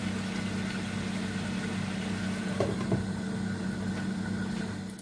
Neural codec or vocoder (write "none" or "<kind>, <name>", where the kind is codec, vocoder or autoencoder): none